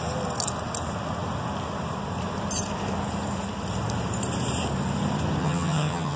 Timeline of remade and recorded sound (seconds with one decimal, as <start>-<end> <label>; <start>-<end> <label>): 0.0-5.4 recorded; 5.4-6.2 remade